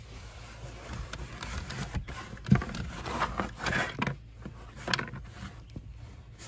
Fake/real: real